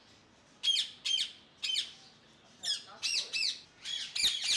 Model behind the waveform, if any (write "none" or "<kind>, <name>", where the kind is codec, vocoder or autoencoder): none